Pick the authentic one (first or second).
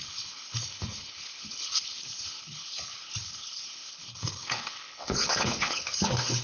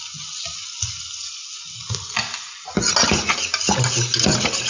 second